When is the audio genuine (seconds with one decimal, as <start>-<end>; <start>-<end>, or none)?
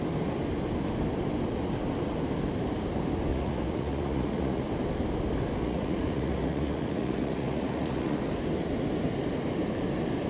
0.0-3.3; 4.6-5.6; 8.2-10.3